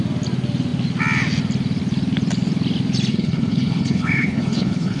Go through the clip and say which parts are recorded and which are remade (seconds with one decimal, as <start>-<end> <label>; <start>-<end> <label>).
0.0-3.1 recorded; 3.1-5.0 remade